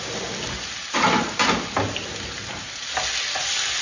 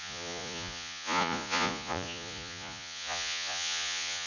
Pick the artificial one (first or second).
second